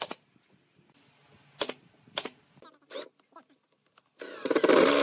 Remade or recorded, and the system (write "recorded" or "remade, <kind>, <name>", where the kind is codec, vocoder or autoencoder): recorded